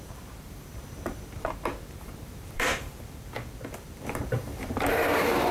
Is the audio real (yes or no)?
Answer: no